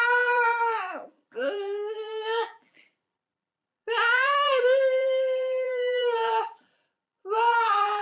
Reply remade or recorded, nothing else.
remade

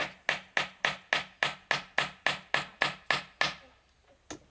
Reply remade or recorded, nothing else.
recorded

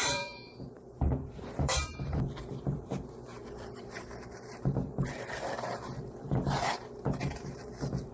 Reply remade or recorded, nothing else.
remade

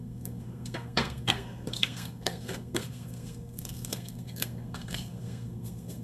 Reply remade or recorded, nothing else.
remade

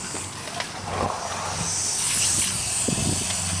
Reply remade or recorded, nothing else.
remade